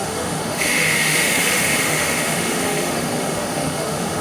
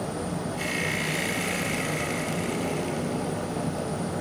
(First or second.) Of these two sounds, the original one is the second